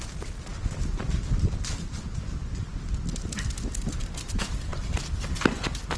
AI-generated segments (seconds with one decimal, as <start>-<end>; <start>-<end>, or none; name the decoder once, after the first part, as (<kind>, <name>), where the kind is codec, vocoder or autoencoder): none

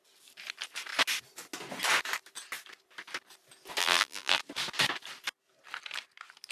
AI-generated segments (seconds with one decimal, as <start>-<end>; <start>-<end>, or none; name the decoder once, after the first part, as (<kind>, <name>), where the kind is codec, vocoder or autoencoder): 3.8-4.4 (vocoder, BigVGAN v2)

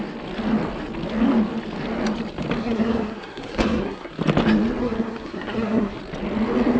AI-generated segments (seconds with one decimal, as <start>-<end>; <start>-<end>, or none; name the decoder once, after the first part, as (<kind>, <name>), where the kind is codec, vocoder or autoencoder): 2.6-4.1 (codec, SNAC); 4.8-6.0